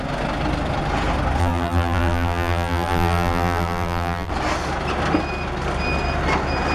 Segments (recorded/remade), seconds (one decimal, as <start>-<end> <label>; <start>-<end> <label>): 0.0-1.4 recorded; 1.4-4.3 remade; 4.3-6.7 recorded